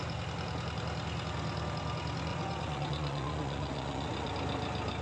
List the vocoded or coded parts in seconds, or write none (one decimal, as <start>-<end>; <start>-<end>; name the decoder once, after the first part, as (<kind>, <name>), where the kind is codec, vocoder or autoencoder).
2.3-4.3 (vocoder, Vocos)